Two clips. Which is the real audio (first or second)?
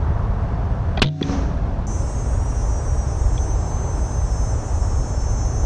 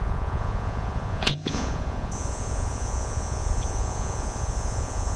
first